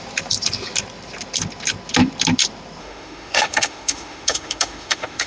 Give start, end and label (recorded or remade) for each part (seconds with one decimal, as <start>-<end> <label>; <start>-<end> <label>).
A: 0.0-2.8 recorded; 2.8-5.3 remade